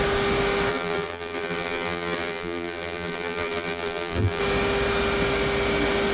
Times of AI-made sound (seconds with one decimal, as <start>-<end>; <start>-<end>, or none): 0.7-4.4